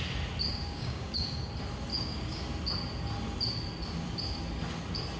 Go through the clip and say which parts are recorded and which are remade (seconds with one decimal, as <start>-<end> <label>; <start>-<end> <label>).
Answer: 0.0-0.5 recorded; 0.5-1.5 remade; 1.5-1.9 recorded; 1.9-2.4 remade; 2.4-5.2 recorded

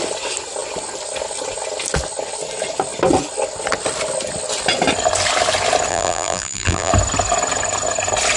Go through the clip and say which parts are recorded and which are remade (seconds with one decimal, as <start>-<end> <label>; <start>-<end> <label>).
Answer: 0.0-5.9 recorded; 5.9-6.9 remade; 6.9-8.4 recorded

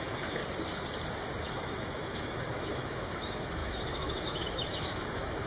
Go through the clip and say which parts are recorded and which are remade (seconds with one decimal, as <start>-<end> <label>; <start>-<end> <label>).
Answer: 0.0-0.4 remade; 0.4-1.4 recorded; 1.4-5.5 remade

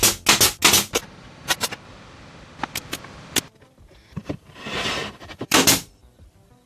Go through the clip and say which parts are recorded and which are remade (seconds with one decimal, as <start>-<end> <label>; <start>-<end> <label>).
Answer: 0.0-4.0 recorded; 4.0-6.7 remade

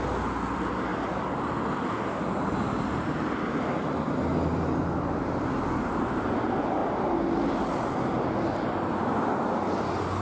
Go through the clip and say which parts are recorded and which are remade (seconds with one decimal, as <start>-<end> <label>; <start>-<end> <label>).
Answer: 0.0-10.2 recorded

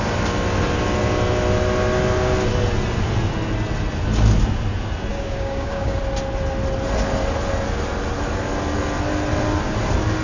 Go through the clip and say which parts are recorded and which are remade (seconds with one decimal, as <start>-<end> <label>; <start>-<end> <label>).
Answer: 0.0-5.1 recorded; 5.1-6.0 remade; 6.0-10.2 recorded

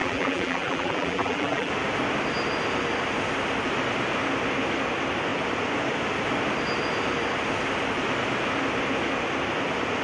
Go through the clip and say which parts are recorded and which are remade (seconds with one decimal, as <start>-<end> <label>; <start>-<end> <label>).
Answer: 0.0-1.7 remade; 1.7-10.0 recorded